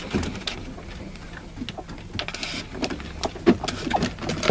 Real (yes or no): yes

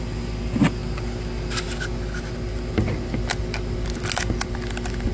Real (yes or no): yes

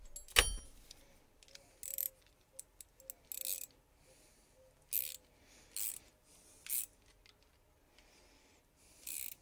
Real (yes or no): yes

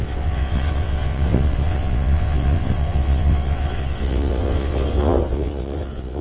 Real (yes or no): no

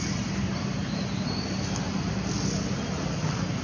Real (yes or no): yes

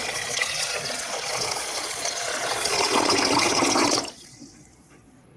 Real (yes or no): no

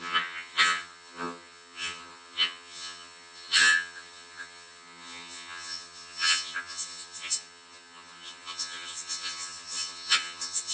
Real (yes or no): no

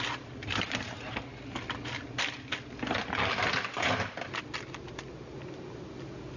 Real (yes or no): yes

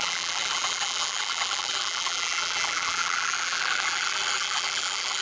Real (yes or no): no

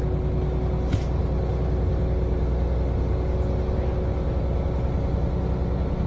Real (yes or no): yes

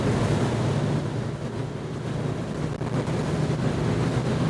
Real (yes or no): yes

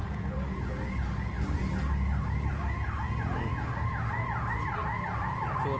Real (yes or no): yes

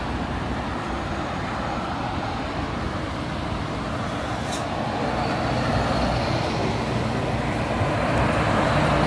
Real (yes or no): yes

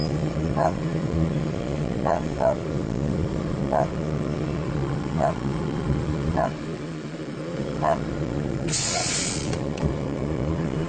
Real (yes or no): no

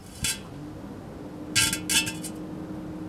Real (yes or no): yes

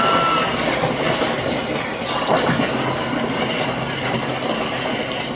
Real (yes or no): yes